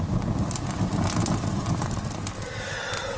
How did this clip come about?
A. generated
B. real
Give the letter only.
B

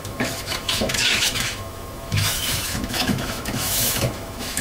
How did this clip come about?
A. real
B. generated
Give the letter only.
B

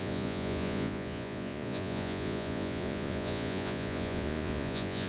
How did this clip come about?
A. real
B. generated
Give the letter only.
B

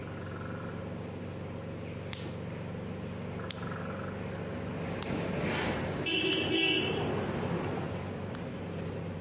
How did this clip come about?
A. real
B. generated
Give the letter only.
A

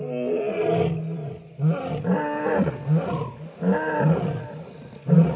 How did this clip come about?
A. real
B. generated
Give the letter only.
A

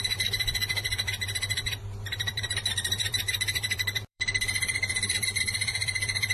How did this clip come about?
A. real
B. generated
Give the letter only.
B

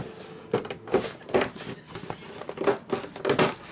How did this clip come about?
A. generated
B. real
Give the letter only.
B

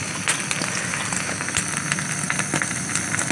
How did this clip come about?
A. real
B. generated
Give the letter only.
A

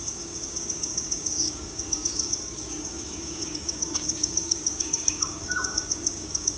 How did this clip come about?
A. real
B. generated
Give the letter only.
B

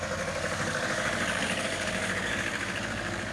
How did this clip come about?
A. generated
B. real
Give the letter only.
A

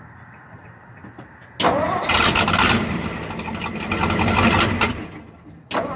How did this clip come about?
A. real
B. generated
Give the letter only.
A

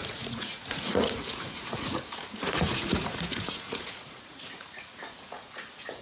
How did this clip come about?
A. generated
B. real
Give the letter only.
A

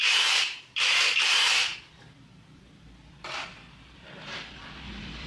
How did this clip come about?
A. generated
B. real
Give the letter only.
A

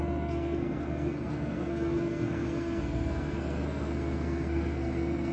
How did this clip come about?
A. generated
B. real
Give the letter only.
A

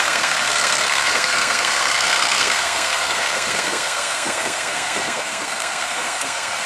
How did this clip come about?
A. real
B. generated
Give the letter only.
B